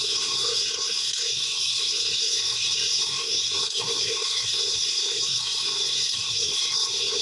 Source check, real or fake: fake